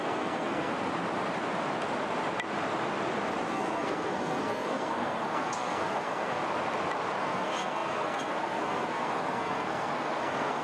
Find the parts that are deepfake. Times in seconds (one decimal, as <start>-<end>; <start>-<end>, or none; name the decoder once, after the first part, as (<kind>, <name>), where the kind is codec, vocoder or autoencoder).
0.0-0.7 (codec, SNAC); 3.5-6.4; 7.2-10.6